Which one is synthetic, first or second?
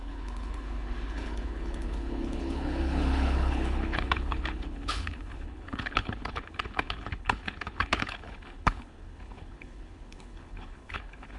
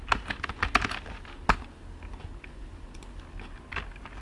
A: first